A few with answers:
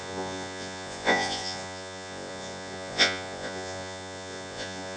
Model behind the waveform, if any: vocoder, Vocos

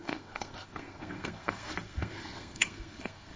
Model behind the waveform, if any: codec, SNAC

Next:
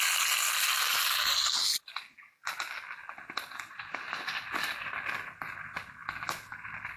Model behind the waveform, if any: none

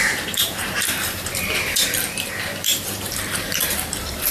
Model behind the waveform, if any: vocoder, BigVGAN v2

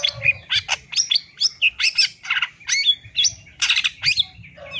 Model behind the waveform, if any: none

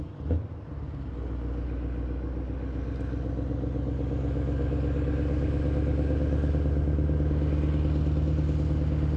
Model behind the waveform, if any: none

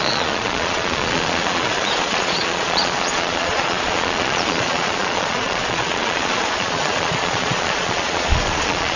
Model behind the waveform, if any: vocoder, Vocos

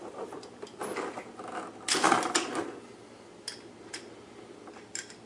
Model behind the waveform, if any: none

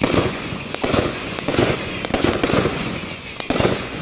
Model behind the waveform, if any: vocoder, Vocos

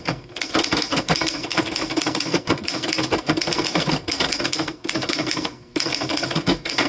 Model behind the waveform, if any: codec, SNAC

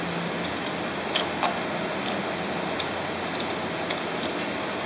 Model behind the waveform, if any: none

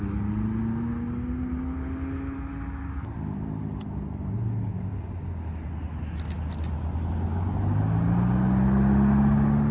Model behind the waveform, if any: none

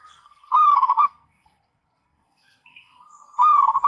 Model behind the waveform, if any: codec, SNAC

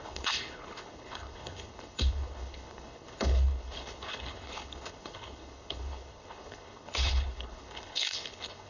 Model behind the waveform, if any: codec, HILCodec